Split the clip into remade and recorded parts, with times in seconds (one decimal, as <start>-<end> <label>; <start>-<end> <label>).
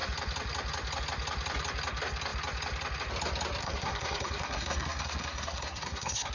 0.0-3.6 recorded; 3.6-6.3 remade